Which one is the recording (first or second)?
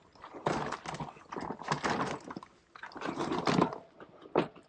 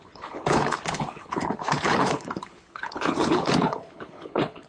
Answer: first